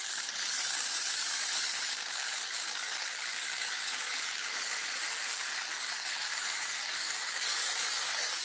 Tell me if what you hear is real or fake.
fake